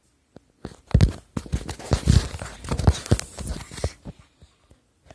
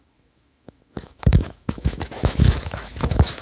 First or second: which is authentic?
first